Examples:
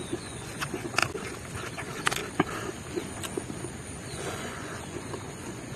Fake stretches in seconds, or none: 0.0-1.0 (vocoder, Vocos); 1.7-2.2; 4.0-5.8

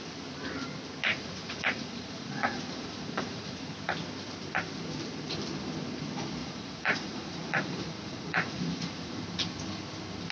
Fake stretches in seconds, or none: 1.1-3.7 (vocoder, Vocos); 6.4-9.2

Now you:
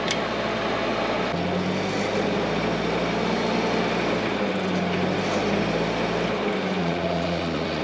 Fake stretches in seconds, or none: 6.8-7.8 (vocoder, Vocos)